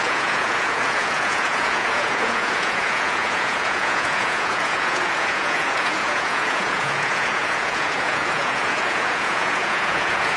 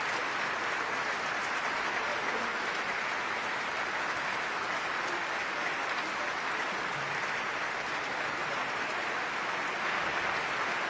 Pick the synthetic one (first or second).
first